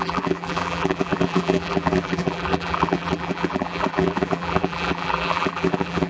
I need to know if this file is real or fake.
fake